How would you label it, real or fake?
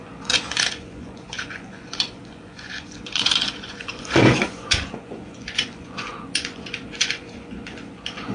fake